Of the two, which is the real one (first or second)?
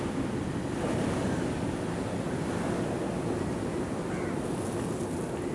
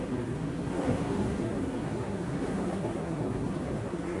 first